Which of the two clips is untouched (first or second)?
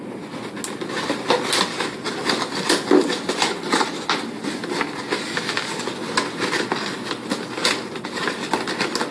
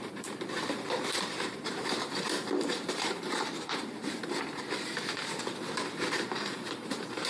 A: first